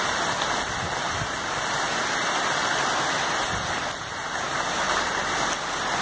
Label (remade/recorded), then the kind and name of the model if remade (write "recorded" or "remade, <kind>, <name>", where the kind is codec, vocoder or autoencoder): recorded